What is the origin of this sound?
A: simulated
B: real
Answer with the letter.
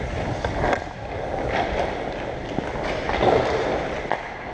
B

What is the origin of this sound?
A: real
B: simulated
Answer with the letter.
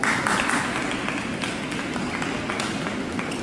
A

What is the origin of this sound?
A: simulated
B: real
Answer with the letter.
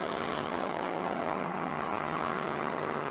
A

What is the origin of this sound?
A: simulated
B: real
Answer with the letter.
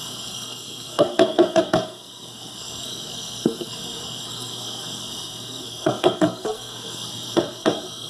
A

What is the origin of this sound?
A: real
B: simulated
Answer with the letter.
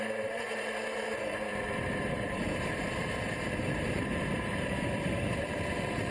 B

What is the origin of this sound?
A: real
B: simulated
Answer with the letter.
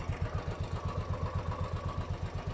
A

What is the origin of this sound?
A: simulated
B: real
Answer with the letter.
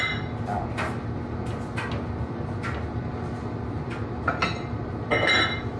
B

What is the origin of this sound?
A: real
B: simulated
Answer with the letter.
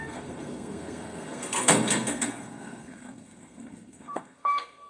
B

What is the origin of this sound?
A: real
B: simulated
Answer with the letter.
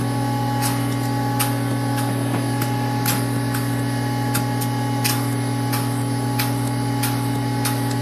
A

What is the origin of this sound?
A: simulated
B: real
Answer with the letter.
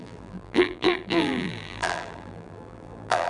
A